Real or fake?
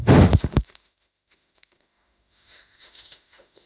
fake